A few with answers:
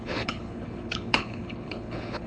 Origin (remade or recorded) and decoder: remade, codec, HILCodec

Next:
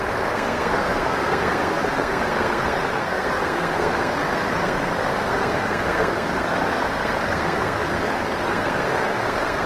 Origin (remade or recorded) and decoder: remade, codec, SNAC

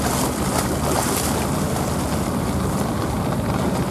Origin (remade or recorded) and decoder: recorded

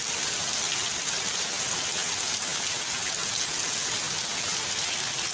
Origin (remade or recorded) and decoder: recorded